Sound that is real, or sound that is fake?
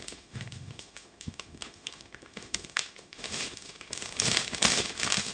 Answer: fake